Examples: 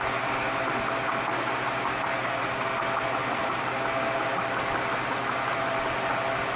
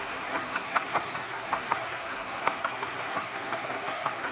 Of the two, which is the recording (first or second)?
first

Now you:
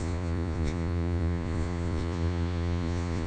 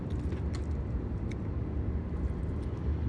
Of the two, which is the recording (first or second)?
second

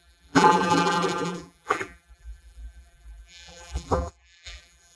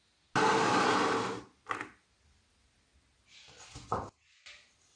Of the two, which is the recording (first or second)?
second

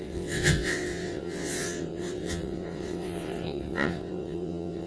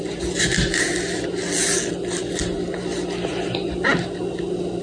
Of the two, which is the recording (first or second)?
second